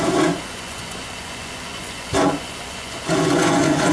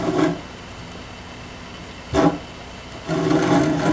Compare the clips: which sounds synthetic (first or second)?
first